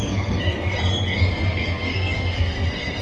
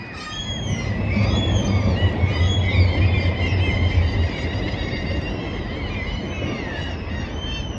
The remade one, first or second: first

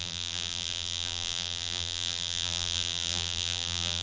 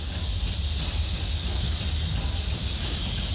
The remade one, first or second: first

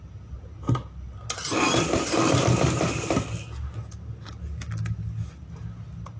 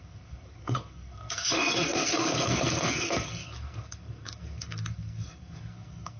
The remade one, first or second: second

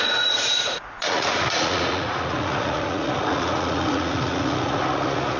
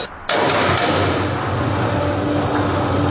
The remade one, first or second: first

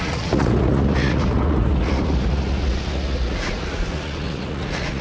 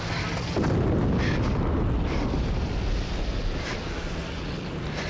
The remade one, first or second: first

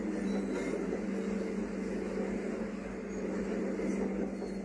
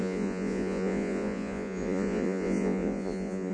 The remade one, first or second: second